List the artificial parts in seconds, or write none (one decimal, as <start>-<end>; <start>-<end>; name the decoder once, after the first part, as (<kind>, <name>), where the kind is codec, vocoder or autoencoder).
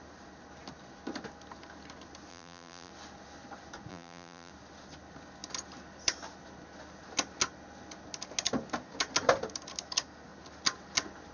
2.3-2.9 (vocoder, BigVGAN v2); 3.9-4.5